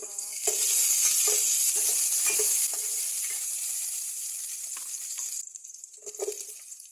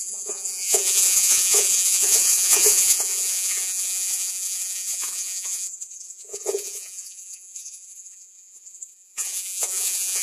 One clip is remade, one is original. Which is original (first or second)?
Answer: first